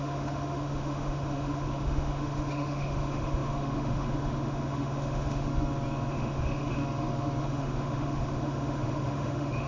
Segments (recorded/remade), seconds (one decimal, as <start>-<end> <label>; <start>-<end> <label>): 0.0-5.5 remade; 5.5-6.1 recorded; 6.1-6.8 remade; 6.8-7.4 recorded; 7.4-9.7 remade